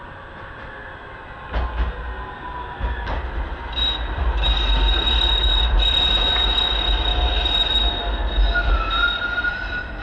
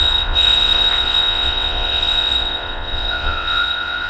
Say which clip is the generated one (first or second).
second